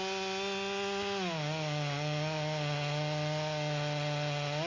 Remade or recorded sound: recorded